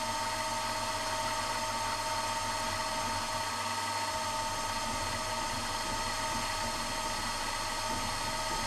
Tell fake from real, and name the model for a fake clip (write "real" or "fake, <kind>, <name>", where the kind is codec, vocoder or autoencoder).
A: real